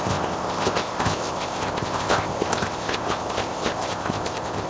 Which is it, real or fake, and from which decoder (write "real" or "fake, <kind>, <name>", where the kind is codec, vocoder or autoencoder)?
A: fake, codec, ZipCodec